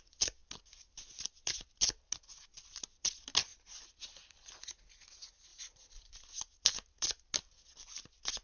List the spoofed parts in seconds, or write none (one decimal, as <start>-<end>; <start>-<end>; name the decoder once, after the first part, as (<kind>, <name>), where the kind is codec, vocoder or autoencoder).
5.5-6.1 (vocoder, BigVGAN v2)